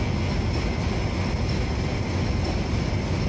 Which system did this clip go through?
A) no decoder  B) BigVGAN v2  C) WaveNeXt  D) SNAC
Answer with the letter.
A